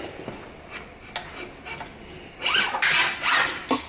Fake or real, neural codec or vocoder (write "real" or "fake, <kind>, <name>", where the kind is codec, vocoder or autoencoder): real